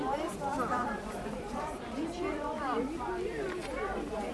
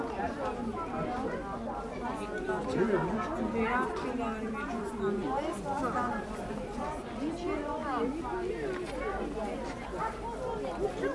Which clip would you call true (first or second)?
second